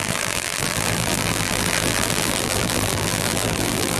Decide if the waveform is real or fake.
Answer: fake